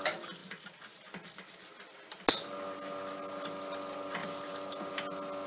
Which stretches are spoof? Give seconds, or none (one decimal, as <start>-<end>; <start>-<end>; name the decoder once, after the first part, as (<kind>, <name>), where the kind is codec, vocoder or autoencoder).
4.2-4.9 (vocoder, BigVGAN v2)